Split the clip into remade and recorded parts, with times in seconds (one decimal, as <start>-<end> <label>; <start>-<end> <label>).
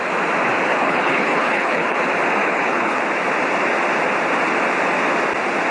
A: 0.0-0.7 recorded; 0.7-2.0 remade; 2.0-2.4 recorded; 2.4-3.0 remade; 3.0-5.7 recorded